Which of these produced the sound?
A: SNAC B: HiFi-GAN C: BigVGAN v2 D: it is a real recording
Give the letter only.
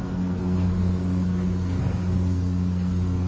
A